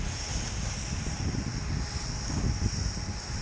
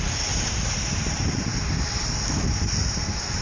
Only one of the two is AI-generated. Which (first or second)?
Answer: second